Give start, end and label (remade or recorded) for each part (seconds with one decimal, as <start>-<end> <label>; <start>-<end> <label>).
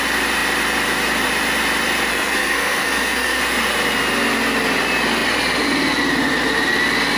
0.0-2.1 recorded; 2.1-3.4 remade; 3.4-7.2 recorded